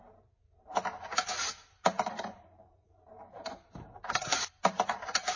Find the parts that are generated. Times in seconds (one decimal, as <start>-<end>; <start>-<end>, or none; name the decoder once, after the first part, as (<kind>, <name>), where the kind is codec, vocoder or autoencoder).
0.0-5.4 (vocoder, BigVGAN v2)